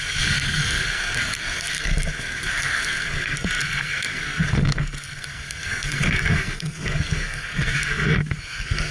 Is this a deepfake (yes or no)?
yes